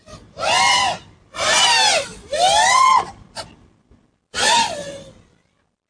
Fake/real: real